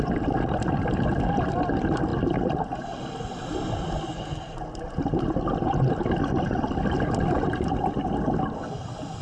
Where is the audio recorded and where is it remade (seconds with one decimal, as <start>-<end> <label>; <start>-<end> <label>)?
0.0-9.2 recorded